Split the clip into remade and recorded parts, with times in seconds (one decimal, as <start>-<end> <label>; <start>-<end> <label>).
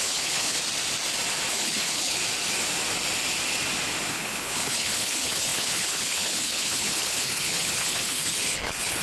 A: 0.0-0.6 remade; 0.6-1.5 recorded; 1.5-2.2 remade; 2.2-4.1 recorded; 4.1-9.0 remade